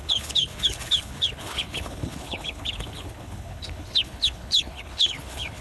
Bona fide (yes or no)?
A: no